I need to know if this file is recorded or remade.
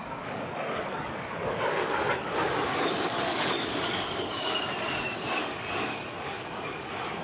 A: remade